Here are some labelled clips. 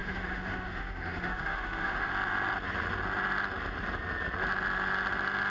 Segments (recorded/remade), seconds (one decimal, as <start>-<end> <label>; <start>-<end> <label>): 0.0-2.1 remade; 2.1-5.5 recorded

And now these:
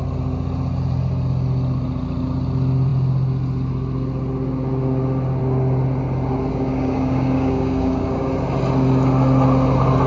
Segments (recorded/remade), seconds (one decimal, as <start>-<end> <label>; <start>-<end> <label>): 0.0-6.5 recorded; 6.5-8.3 remade; 8.3-10.1 recorded

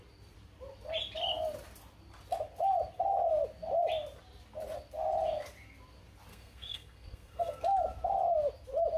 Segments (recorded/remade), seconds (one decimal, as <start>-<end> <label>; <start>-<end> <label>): 0.0-6.3 recorded; 6.3-7.6 remade; 7.6-9.0 recorded

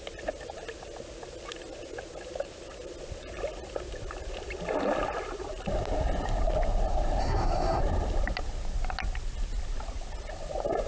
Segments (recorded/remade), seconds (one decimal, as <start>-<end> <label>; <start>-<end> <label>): 0.0-7.2 recorded; 7.2-7.8 remade; 7.8-10.9 recorded